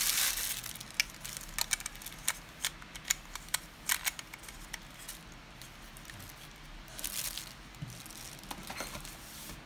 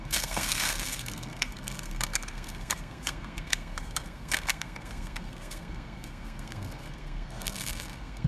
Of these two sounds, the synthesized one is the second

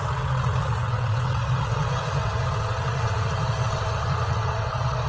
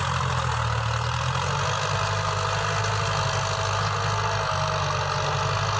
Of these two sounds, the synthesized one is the first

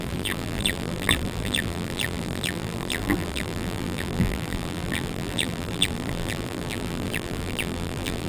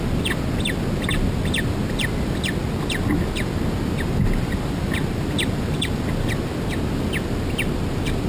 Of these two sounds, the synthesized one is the first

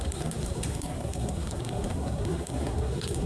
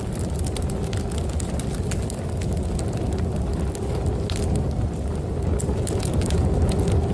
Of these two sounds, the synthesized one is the first